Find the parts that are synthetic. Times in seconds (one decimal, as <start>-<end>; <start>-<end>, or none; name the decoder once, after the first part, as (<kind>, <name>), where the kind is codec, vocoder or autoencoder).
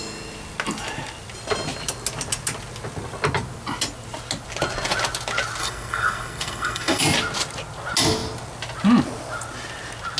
5.6-7.0 (codec, SNAC)